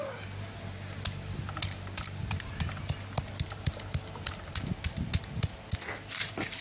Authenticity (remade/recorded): recorded